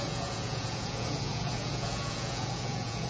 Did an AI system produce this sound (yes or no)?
yes